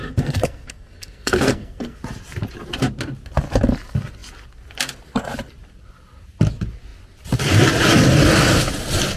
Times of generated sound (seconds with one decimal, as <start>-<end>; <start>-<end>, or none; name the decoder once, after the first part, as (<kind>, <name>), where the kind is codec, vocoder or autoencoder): 0.0-2.0 (codec, SNAC)